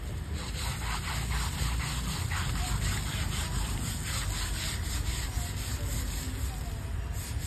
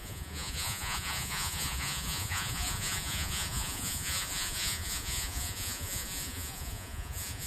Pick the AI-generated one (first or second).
second